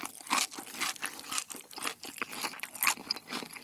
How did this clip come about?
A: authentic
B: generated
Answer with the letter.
A